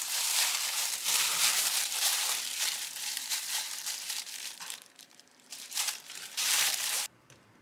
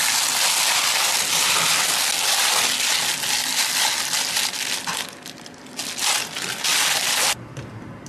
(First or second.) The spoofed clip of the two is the first